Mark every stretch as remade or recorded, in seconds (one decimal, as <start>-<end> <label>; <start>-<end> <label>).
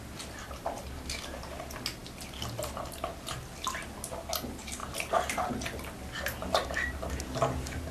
0.0-7.9 recorded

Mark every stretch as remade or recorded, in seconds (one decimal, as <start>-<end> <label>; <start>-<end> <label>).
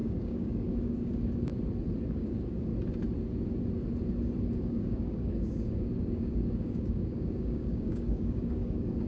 0.0-1.5 remade; 1.5-2.1 recorded; 2.1-2.7 remade; 2.7-4.4 recorded; 4.4-9.1 remade